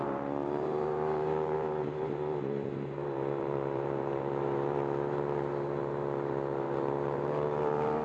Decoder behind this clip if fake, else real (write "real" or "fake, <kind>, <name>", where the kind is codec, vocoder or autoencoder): fake, vocoder, BigVGAN v2